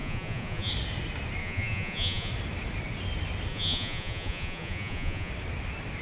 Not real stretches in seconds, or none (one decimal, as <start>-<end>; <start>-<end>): 0.0-0.7; 1.4-2.3; 3.5-5.3